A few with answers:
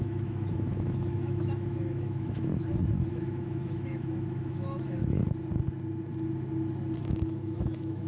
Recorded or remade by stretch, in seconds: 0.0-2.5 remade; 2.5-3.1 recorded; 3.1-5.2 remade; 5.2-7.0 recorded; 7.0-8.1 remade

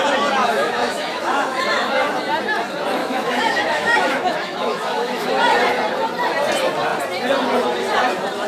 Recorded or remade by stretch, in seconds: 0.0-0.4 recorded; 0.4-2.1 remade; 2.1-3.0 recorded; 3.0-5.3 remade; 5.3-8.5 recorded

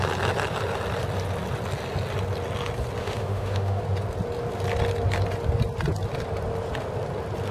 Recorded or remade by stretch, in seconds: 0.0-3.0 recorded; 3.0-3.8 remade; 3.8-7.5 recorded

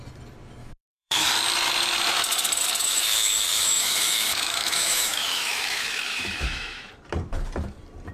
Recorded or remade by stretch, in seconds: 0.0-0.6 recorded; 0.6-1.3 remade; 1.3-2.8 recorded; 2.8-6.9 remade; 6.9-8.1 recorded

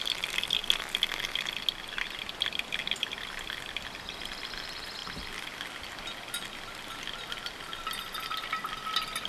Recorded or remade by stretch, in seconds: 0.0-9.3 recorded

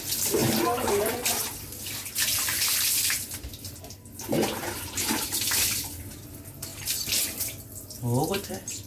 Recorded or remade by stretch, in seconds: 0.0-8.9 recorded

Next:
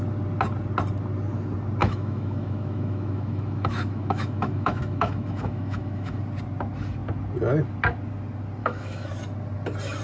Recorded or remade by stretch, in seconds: 0.0-1.8 recorded; 1.8-6.2 remade; 6.2-8.6 recorded; 8.6-9.1 remade; 9.1-10.0 recorded